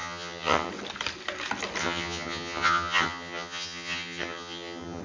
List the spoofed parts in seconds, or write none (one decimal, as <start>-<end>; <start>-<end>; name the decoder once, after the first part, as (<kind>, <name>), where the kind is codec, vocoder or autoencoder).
0.0-0.7 (vocoder, HiFi-GAN); 1.8-5.0